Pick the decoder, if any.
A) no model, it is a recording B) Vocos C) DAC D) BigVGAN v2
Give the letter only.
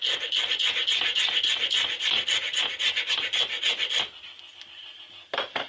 A